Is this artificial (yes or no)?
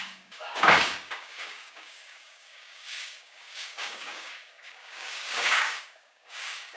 yes